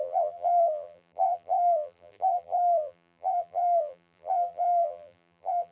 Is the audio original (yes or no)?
no